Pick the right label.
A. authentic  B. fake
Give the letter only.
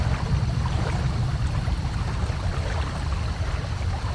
A